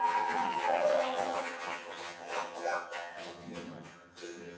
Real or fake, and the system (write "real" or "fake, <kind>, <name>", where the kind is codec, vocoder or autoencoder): fake, vocoder, HiFi-GAN